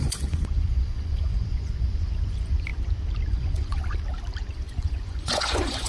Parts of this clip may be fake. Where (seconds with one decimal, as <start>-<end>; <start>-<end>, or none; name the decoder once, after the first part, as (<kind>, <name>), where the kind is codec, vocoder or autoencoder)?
0.0-2.7 (vocoder, Vocos); 3.3-3.8; 4.5-5.9